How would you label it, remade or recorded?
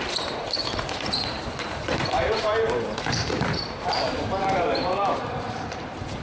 remade